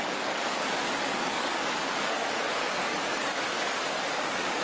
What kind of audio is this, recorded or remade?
remade